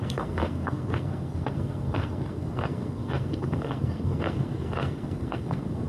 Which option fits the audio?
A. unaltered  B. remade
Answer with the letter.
B